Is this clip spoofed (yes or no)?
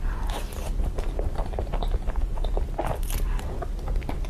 no